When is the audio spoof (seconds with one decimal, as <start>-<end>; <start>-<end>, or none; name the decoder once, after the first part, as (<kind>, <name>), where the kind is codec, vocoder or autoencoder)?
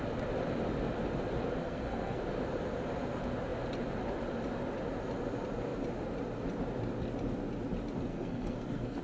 1.6-2.2 (codec, SNAC); 8.1-9.0